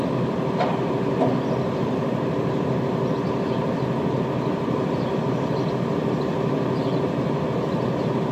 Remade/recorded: recorded